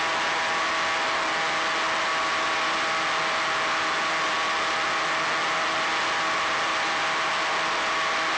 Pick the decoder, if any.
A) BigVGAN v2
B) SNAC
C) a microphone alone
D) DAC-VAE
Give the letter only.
C